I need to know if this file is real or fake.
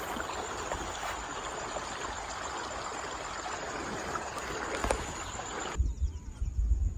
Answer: real